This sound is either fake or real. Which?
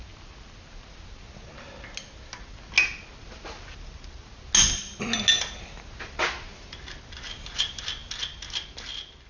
real